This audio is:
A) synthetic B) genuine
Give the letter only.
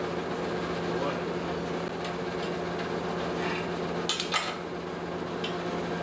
B